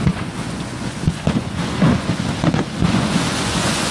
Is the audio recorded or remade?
remade